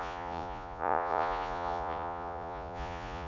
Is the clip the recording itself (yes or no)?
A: no